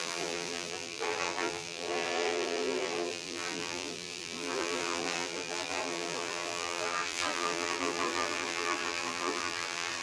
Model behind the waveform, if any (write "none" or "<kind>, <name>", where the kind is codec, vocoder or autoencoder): vocoder, BigVGAN v2